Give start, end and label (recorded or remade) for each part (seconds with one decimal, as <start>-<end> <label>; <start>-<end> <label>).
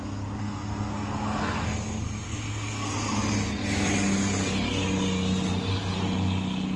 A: 0.0-0.4 recorded; 0.4-2.9 remade; 2.9-6.8 recorded